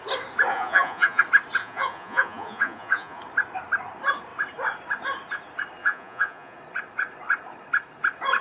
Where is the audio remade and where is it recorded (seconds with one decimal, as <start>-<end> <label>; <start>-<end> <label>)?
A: 0.0-0.5 recorded; 0.5-1.2 remade; 1.2-1.6 recorded; 1.6-3.2 remade; 3.2-5.8 recorded; 5.8-6.6 remade; 6.6-8.4 recorded